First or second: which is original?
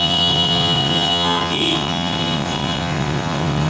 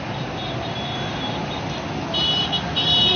second